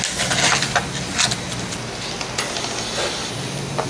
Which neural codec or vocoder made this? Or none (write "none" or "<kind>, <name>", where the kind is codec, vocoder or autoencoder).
none